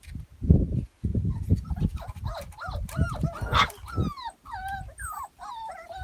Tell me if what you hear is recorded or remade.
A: recorded